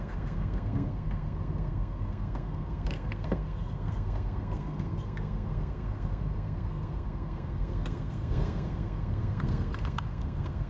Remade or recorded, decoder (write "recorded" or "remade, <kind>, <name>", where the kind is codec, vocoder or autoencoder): remade, codec, SNAC